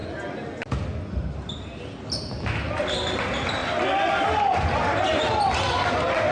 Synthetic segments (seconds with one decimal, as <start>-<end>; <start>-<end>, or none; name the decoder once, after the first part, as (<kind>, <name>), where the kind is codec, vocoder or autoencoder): none

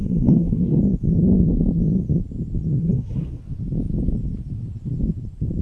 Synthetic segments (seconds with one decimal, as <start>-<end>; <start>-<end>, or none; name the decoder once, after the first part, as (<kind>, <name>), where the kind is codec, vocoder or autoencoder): 0.0-0.8 (codec, SNAC); 2.8-3.4

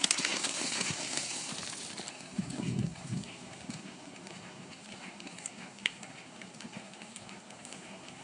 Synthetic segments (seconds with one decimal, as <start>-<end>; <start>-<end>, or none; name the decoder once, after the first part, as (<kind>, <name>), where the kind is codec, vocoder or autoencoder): 0.0-1.5 (codec, SNAC); 2.1-8.2